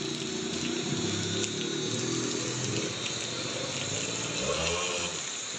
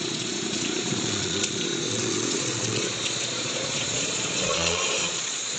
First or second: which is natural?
first